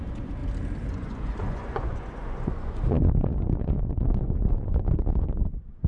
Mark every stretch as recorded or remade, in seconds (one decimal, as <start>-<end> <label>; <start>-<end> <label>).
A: 0.0-0.4 remade; 0.4-0.9 recorded; 0.9-5.9 remade